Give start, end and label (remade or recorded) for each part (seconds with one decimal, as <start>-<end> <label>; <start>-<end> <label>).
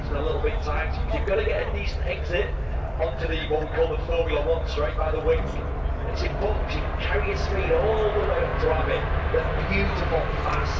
0.0-10.8 recorded